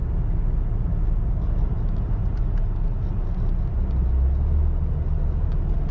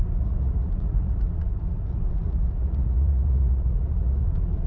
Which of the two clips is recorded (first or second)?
first